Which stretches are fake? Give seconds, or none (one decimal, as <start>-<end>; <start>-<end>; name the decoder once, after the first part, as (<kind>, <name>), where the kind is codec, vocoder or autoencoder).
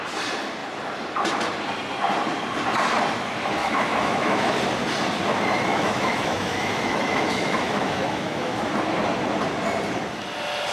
3.6-4.6 (autoencoder, DAC-VAE); 5.7-8.6